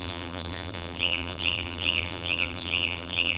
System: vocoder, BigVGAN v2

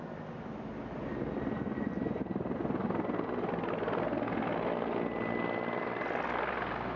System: none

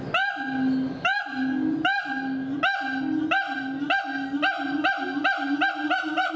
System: none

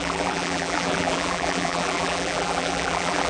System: vocoder, BigVGAN v2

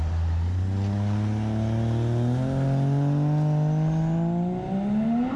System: none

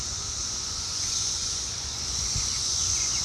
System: vocoder, Vocos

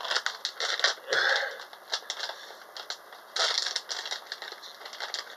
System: none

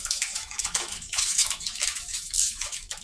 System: autoencoder, DAC-VAE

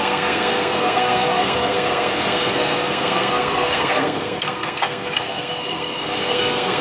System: codec, SNAC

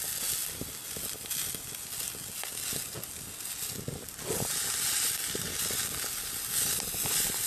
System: none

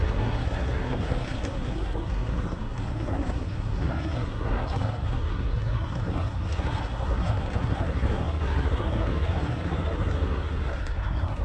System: codec, SNAC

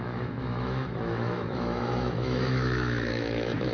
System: autoencoder, DAC-VAE